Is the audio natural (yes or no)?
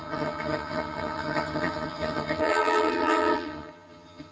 no